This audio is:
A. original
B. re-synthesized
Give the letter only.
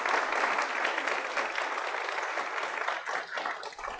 A